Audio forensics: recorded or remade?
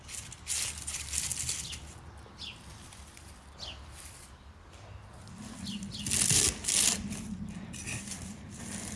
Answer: recorded